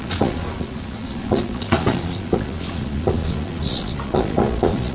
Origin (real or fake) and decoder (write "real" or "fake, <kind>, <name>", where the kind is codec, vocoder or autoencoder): fake, vocoder, Vocos